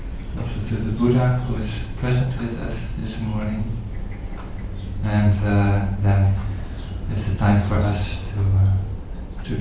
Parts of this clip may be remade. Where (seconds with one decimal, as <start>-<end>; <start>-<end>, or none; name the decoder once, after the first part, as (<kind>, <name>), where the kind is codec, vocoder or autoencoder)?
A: 6.4-7.4 (vocoder, BigVGAN v2)